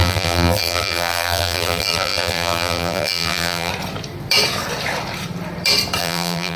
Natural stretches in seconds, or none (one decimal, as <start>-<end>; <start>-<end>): 3.7-6.0